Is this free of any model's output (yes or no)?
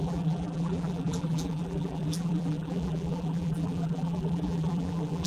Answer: no